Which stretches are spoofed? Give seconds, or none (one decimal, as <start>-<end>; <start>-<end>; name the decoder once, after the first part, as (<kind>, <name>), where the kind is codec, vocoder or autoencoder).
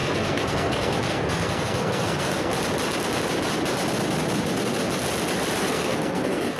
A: 0.0-2.5 (codec, SNAC); 5.6-6.6